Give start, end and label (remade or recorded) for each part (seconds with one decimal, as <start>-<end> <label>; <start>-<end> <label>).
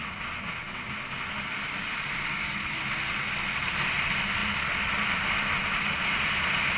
0.0-2.3 recorded; 2.3-2.8 remade; 2.8-6.8 recorded